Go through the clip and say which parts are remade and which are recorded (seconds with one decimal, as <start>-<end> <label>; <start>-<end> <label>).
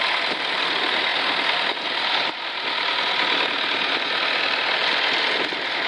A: 0.0-5.9 recorded